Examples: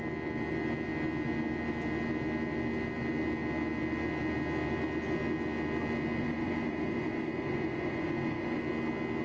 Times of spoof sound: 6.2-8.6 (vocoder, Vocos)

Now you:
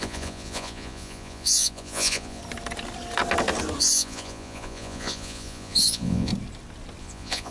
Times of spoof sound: 0.0-2.4 (vocoder, Vocos); 3.8-6.3; 7.0-7.5

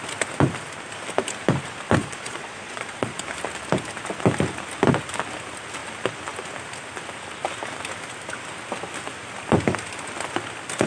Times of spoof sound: 2.0-3.2 (vocoder, Vocos)

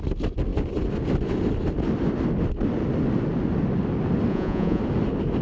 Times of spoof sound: 4.3-4.8 (vocoder, Vocos)

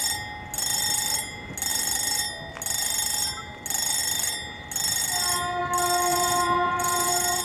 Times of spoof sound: 6.1-7.4 (vocoder, Vocos)

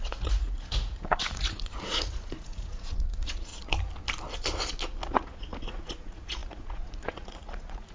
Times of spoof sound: 0.0-3.5 (vocoder, Vocos); 5.1-7.9